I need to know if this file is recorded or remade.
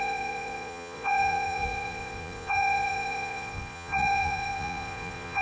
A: remade